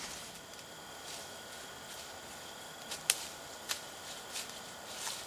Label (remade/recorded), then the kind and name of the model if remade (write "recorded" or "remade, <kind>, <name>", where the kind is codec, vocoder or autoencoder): recorded